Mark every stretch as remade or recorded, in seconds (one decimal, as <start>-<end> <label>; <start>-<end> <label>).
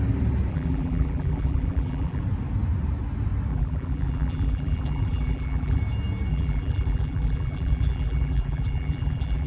0.0-0.5 recorded; 0.5-2.2 remade; 2.2-3.5 recorded; 3.5-5.8 remade; 5.8-6.3 recorded; 6.3-9.5 remade